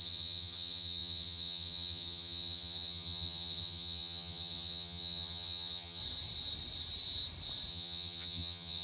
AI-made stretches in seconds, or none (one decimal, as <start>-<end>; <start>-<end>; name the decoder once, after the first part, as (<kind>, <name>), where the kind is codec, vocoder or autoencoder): 0.0-6.0 (vocoder, HiFi-GAN); 7.7-8.8